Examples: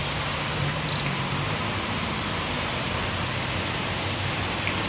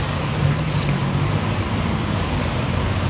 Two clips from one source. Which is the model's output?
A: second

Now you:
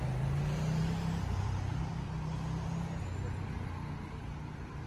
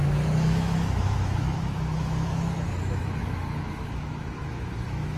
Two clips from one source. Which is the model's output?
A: second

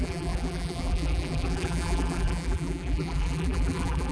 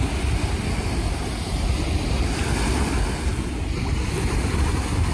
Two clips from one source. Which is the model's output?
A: first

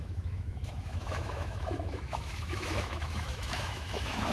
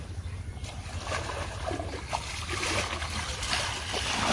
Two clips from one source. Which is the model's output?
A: first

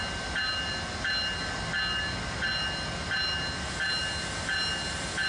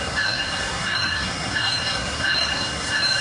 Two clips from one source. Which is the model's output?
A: second